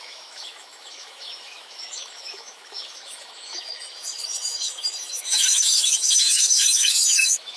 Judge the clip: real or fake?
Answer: fake